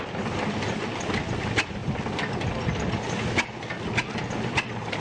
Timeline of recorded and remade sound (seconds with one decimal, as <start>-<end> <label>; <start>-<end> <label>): 0.0-5.0 recorded